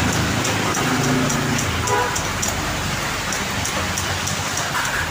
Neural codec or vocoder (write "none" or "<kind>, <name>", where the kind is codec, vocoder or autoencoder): none